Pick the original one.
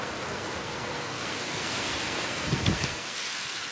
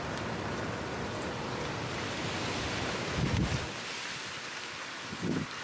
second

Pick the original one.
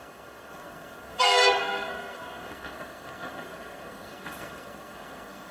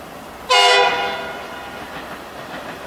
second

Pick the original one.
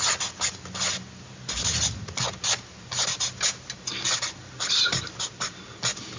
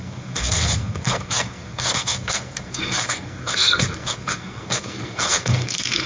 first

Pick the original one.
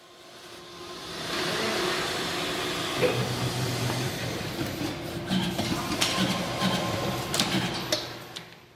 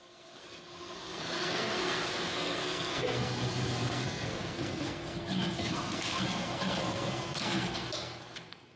first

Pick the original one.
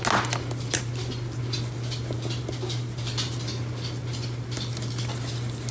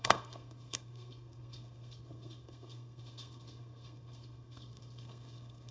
first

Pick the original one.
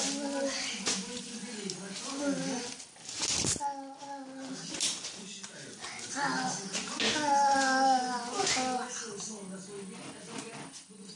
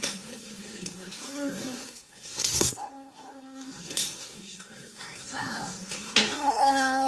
first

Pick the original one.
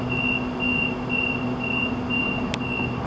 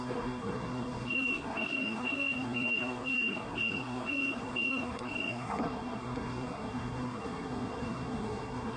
first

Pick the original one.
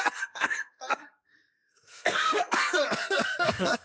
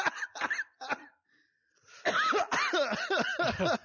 second